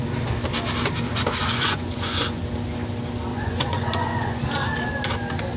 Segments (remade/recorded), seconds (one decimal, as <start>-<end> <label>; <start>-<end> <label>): 0.0-1.4 recorded; 1.4-2.4 remade; 2.4-3.3 recorded; 3.3-4.4 remade; 4.4-5.6 recorded